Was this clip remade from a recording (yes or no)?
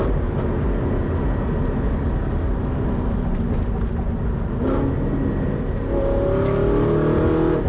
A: no